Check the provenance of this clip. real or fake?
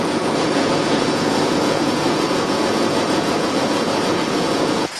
fake